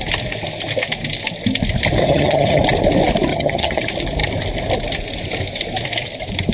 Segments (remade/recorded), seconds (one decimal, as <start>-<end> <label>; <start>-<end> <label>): 0.0-2.0 recorded; 2.0-2.6 remade; 2.6-3.3 recorded; 3.3-3.8 remade; 3.8-6.5 recorded

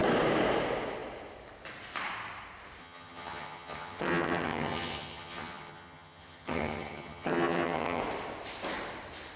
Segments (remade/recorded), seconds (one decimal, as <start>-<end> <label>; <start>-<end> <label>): 0.0-2.8 recorded; 2.8-8.0 remade; 8.0-9.4 recorded

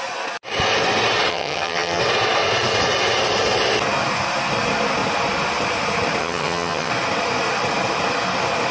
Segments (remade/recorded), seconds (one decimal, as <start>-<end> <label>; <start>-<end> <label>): 0.0-1.3 recorded; 1.3-2.0 remade; 2.0-6.2 recorded; 6.2-6.9 remade; 6.9-8.7 recorded

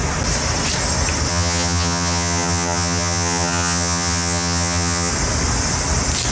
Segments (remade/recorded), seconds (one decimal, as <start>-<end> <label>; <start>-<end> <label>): 0.0-1.3 recorded; 1.3-5.1 remade; 5.1-6.3 recorded